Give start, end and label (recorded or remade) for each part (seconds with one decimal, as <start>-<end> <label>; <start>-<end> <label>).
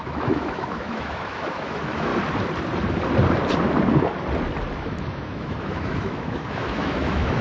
0.0-2.1 remade; 2.1-4.8 recorded; 4.8-7.4 remade